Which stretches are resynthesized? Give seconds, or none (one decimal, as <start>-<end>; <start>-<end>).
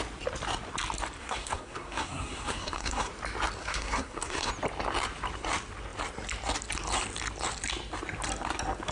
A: 1.2-3.1; 3.6-4.5